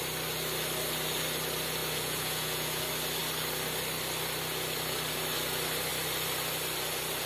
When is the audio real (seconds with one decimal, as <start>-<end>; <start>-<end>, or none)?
0.0-1.8; 2.8-7.3